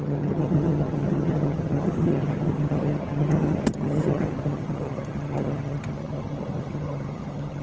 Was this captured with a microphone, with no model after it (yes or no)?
no